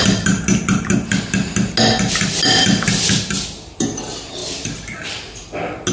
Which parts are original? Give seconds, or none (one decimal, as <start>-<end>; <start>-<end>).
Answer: 0.0-5.9

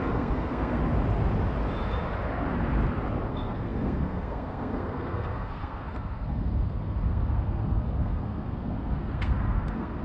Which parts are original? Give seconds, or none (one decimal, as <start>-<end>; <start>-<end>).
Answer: 0.8-3.3

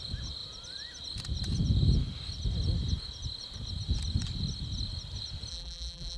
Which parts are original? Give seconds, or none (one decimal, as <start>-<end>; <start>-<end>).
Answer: 0.0-5.5

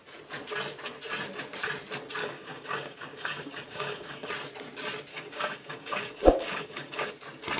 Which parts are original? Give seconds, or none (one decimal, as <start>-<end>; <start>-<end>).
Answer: 0.0-2.2; 4.3-5.1; 7.1-7.6

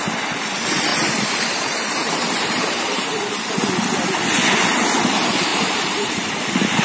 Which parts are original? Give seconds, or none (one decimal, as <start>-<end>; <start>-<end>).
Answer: 0.0-0.9; 3.5-5.5; 6.3-6.8

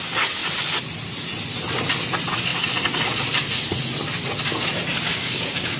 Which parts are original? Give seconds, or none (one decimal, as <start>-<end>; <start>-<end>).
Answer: 0.0-5.1

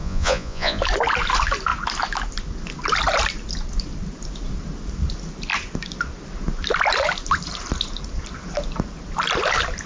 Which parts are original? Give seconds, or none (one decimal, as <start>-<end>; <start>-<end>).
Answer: 0.8-9.9